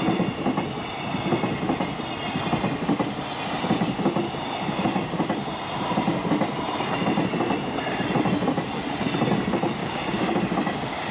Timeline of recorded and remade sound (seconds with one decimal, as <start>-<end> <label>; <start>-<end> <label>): 0.0-9.8 recorded; 9.8-10.3 remade; 10.3-11.1 recorded